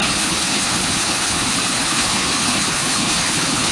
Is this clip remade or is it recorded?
remade